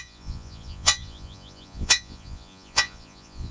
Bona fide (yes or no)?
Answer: no